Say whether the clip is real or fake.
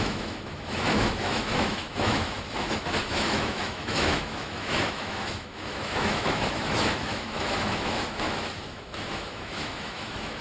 fake